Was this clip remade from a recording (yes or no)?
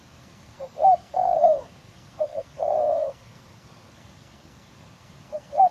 yes